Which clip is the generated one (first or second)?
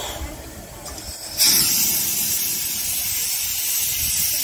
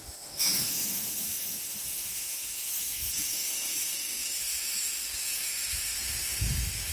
second